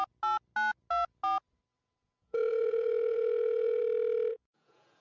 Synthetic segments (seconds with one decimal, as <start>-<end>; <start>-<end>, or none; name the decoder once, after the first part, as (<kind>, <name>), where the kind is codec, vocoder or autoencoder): 1.7-3.8 (vocoder, Vocos); 4.3-5.0

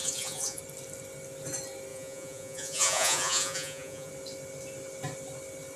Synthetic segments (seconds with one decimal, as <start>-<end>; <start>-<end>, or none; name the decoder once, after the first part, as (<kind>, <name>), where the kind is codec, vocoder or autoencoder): 0.0-0.6 (vocoder, Vocos); 1.9-4.1

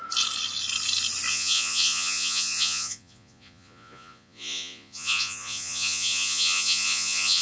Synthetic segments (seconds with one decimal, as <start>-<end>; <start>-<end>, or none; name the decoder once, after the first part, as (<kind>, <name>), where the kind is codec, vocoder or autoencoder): 1.3-7.4 (vocoder, Vocos)

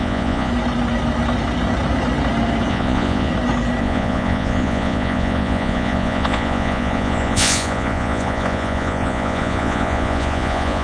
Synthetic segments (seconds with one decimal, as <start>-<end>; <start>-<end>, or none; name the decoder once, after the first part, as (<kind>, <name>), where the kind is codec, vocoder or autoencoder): 0.0-0.5 (vocoder, Vocos); 2.7-3.3; 3.8-10.8

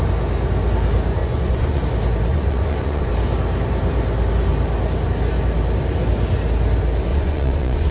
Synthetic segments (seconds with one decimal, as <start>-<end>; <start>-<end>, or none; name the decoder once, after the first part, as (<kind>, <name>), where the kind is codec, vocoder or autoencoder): 1.2-1.8 (vocoder, Vocos); 2.3-3.1; 7.1-7.9

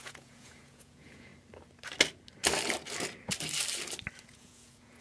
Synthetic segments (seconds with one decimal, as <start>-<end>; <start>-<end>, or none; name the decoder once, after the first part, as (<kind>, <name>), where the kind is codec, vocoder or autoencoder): 0.0-1.3 (vocoder, Vocos); 4.3-5.0

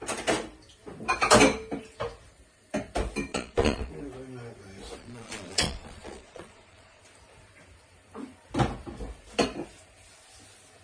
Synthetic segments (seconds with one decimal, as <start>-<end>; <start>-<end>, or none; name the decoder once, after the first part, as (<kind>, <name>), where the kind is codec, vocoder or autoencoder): 3.3-3.9 (vocoder, Vocos); 5.0-7.0

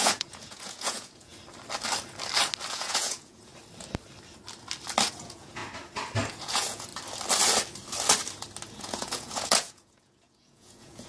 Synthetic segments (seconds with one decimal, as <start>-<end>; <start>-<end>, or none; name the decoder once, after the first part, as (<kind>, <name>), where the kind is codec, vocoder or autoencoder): 0.0-1.3 (vocoder, Vocos); 2.7-3.5; 5.1-5.6; 6.3-6.9; 8.7-11.1